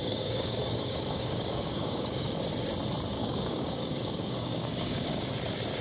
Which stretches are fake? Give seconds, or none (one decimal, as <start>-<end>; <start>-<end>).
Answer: 0.0-2.3; 3.2-5.3